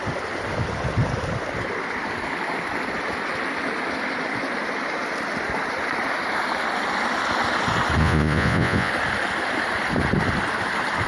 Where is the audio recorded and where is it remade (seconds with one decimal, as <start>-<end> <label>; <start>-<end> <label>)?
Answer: 0.0-8.0 recorded; 8.0-8.9 remade; 8.9-11.1 recorded